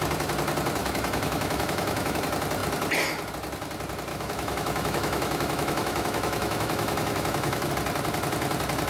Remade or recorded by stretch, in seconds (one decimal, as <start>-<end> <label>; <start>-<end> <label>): 0.0-0.8 recorded; 0.8-2.2 remade; 2.2-4.1 recorded; 4.1-7.7 remade; 7.7-8.9 recorded